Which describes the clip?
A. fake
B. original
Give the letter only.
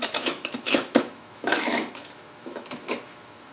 A